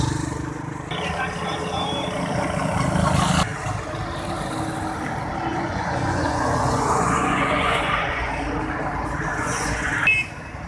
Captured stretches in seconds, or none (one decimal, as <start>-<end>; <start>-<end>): 0.0-5.5; 8.3-9.3; 9.9-10.7